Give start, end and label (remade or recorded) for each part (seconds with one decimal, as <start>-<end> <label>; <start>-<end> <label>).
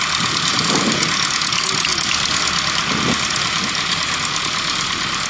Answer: 0.0-5.3 recorded